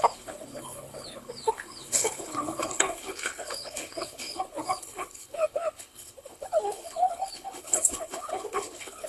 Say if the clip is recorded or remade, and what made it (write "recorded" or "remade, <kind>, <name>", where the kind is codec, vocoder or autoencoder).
remade, codec, HILCodec